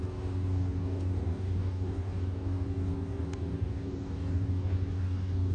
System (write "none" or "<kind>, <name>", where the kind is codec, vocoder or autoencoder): codec, DAC